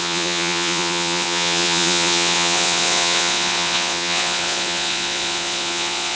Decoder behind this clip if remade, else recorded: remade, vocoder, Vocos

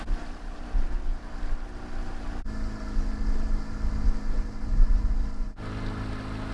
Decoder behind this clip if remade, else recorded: recorded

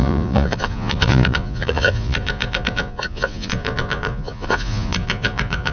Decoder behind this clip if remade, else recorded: remade, vocoder, Vocos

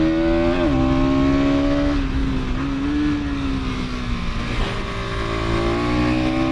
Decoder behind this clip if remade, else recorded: recorded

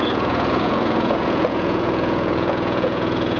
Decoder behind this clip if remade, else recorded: remade, vocoder, Vocos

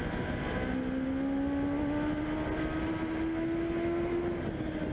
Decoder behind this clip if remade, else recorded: recorded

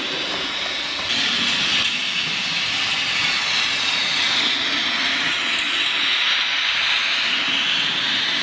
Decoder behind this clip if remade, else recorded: recorded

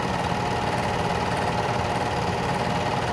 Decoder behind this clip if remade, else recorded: recorded